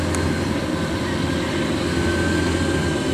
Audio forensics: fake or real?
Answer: real